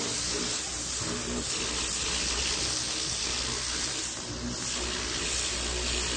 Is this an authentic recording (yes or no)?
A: yes